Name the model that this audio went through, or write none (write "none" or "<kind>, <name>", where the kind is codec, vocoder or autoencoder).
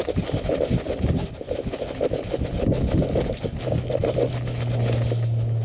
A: none